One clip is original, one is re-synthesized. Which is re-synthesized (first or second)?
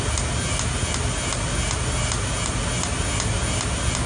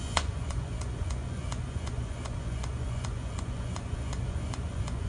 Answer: second